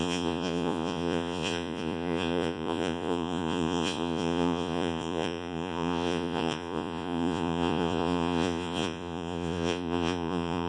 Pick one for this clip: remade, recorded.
remade